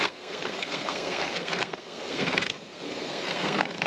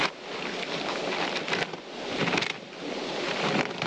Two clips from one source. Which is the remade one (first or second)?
first